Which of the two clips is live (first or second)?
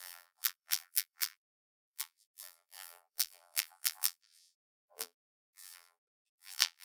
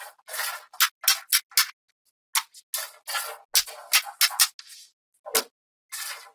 second